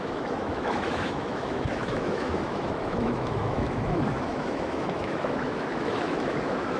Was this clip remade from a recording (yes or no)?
yes